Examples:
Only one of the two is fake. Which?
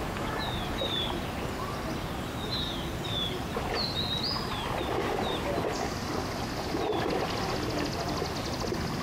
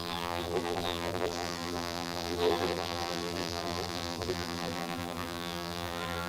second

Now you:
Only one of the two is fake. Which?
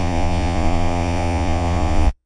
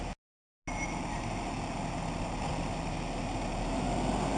first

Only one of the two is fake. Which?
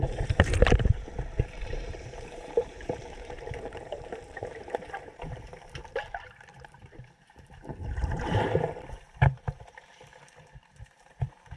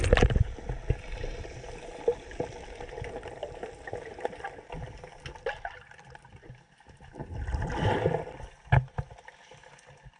first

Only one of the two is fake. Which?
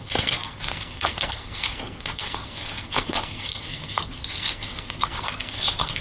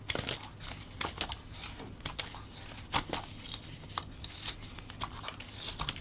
first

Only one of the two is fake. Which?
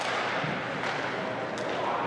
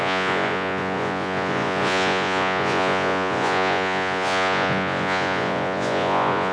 second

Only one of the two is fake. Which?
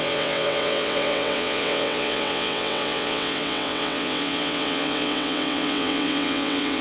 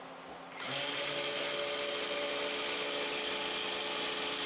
first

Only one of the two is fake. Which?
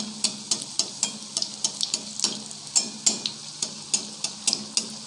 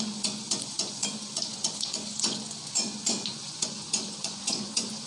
second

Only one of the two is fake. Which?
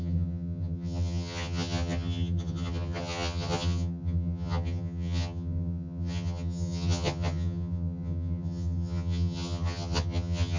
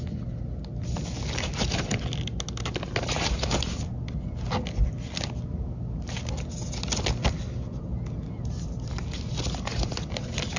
first